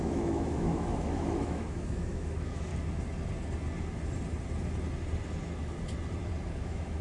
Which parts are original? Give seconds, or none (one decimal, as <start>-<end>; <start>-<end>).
2.7-6.6